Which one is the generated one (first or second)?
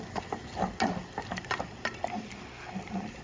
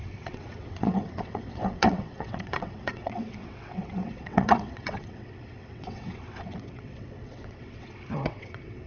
second